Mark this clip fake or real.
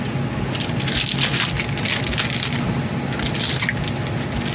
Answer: real